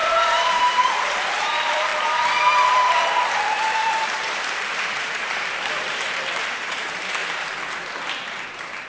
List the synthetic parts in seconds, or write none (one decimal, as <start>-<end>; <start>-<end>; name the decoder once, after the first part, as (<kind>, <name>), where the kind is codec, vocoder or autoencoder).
0.0-7.2 (vocoder, BigVGAN v2); 8.1-8.9